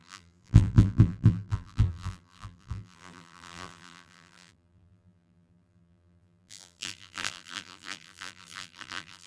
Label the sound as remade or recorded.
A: remade